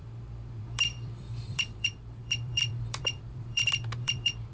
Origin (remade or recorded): remade